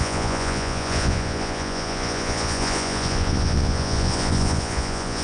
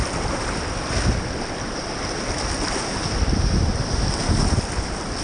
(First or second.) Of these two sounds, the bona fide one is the second